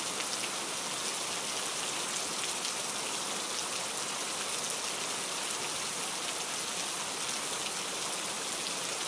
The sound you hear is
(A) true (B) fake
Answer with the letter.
A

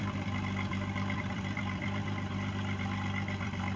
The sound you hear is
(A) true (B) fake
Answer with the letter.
B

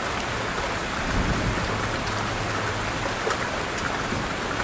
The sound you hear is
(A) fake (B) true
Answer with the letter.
B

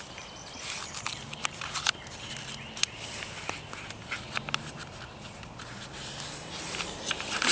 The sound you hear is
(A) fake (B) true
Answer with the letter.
B